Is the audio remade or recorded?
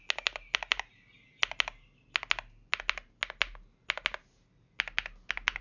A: recorded